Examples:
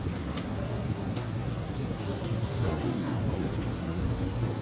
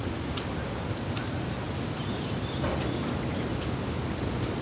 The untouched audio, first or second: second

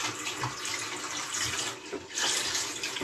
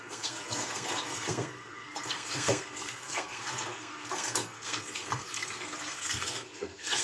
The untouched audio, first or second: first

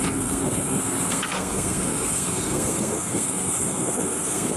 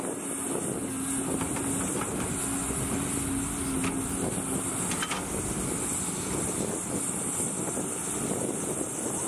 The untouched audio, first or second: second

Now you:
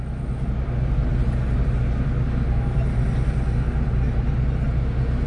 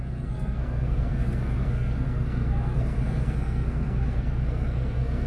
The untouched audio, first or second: first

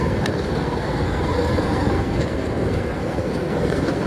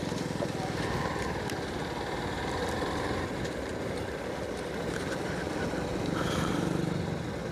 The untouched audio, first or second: second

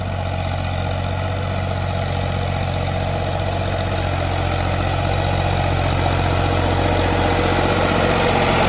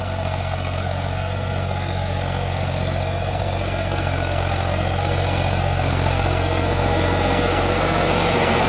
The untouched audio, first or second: first